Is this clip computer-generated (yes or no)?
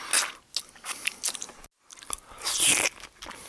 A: no